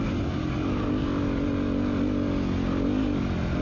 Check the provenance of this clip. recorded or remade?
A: recorded